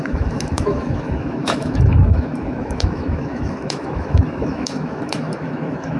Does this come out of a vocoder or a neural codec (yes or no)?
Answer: yes